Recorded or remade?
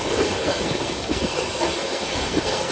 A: remade